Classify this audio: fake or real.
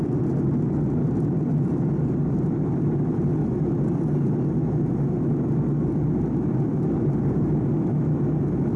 real